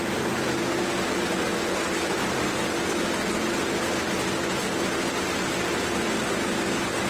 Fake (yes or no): no